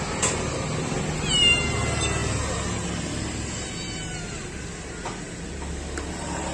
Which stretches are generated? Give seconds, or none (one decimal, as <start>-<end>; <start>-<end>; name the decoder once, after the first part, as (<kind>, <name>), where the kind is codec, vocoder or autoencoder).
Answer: none